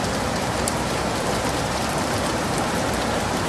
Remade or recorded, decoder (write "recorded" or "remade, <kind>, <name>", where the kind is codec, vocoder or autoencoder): remade, vocoder, BigVGAN v2